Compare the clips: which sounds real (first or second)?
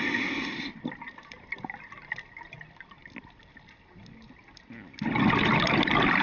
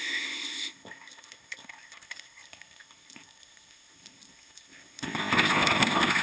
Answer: first